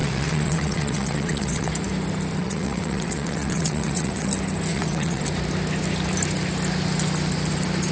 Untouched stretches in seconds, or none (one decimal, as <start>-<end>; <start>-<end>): 1.7-2.4; 4.3-4.7; 5.2-7.9